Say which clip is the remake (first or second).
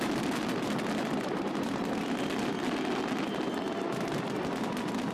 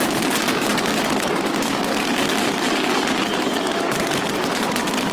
second